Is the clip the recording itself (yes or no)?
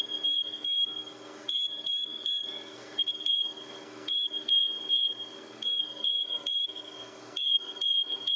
no